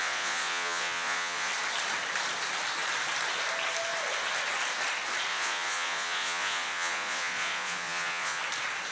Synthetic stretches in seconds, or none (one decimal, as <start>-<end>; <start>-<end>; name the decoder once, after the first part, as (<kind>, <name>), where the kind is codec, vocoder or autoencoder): 0.0-1.5 (vocoder, Vocos); 5.3-8.4